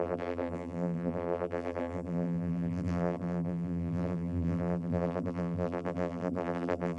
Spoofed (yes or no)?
yes